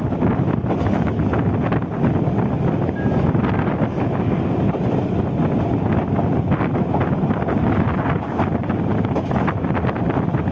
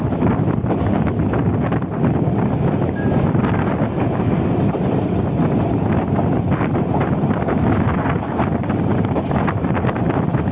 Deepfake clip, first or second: second